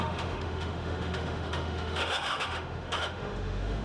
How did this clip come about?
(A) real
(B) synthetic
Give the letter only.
B